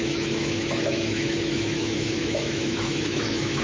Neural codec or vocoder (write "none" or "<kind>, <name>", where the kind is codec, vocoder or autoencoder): autoencoder, DAC-VAE